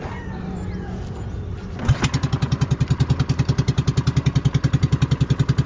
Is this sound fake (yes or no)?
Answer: no